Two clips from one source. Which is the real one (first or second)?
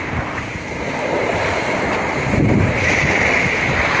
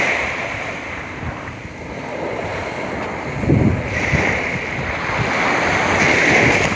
second